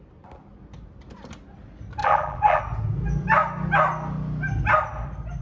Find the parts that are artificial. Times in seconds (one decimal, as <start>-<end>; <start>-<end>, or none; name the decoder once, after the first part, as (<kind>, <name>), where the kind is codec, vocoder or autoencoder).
2.0-2.6 (vocoder, BigVGAN v2)